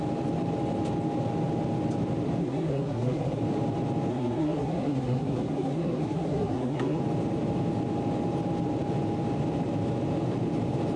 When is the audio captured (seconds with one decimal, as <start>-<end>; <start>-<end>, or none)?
0.0-2.4; 3.4-4.1; 7.0-11.0